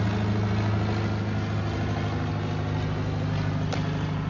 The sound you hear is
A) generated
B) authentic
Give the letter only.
B